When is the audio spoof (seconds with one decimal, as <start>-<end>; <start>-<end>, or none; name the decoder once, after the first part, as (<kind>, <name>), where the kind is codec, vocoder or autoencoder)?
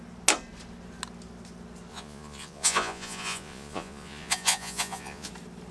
1.9-5.3 (vocoder, Vocos)